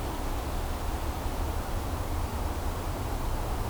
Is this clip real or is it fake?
real